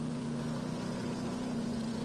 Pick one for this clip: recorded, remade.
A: remade